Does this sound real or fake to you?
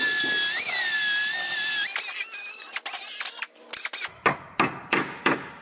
real